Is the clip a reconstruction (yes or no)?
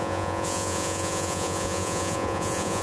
yes